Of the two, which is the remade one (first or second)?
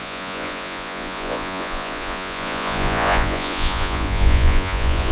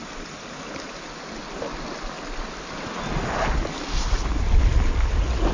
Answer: first